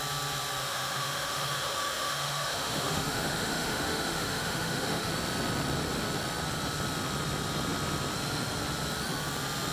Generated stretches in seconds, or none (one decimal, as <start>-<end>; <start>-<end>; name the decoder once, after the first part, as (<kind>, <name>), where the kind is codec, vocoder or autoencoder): 0.6-5.1 (autoencoder, DAC-VAE)